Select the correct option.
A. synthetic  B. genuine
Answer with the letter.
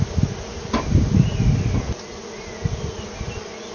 B